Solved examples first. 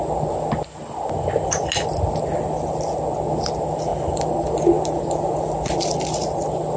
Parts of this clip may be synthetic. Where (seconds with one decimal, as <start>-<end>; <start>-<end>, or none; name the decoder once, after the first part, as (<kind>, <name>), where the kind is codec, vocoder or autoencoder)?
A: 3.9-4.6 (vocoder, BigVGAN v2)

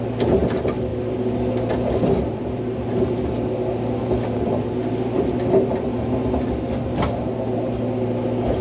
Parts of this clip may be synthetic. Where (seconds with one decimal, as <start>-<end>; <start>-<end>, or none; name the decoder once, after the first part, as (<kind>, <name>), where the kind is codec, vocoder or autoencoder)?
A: none

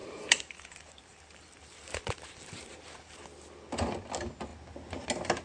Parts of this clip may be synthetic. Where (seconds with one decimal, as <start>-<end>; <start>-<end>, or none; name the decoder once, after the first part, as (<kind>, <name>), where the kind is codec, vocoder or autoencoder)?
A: 0.0-3.2 (vocoder, BigVGAN v2)